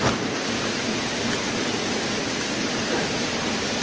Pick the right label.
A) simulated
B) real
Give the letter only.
B